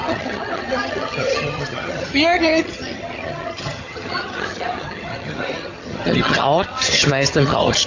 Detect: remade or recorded remade